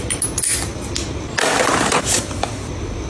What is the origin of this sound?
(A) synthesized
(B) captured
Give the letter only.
B